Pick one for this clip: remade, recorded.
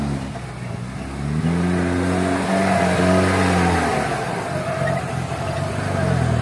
recorded